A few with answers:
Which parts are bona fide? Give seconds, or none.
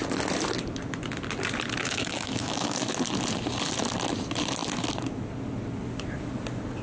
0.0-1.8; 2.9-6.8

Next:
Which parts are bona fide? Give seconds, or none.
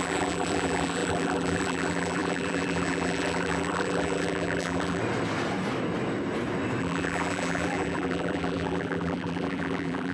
5.0-6.8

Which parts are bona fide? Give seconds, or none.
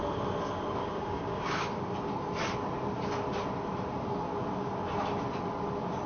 0.0-0.8; 1.8-6.1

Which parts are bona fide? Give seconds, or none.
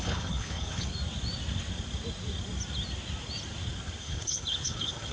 0.9-4.0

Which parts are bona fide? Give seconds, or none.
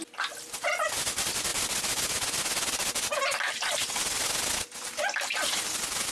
0.0-6.1